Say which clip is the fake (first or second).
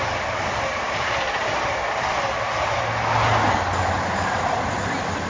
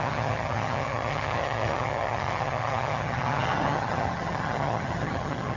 second